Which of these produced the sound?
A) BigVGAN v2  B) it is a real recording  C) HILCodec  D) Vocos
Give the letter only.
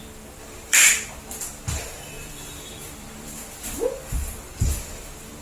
A